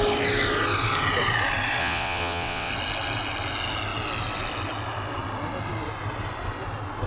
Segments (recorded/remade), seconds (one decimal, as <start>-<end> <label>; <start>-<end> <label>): 0.0-1.8 recorded; 1.8-2.7 remade; 2.7-7.1 recorded